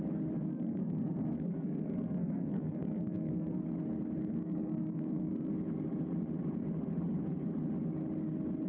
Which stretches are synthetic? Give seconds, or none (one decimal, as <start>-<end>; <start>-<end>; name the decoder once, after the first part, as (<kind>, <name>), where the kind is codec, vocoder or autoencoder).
0.5-3.6 (codec, SNAC); 4.2-5.5